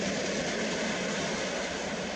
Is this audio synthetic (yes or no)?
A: no